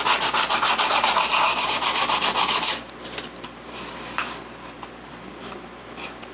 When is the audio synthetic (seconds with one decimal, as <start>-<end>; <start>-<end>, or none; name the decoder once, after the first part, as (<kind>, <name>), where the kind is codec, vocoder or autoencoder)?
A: none